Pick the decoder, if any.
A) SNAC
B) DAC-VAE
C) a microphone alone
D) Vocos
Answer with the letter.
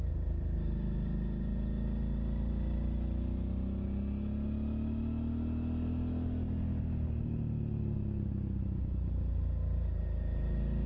C